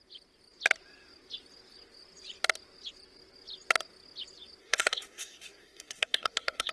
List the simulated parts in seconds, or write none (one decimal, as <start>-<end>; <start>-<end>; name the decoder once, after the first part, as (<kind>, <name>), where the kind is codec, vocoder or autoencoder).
4.6-6.7 (codec, SNAC)